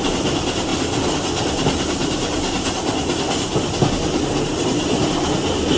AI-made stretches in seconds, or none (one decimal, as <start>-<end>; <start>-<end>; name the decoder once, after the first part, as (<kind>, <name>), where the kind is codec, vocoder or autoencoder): none